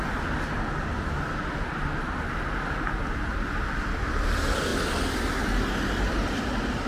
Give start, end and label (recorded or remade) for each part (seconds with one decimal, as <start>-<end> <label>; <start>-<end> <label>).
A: 0.0-6.9 recorded